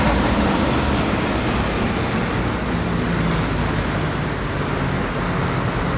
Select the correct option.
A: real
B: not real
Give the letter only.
A